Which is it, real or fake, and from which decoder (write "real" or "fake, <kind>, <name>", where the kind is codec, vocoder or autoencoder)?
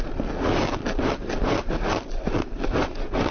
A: real